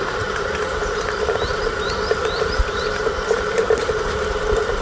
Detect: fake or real fake